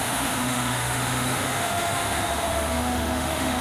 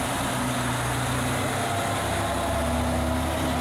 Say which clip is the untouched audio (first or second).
second